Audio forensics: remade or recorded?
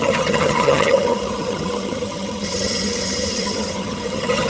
remade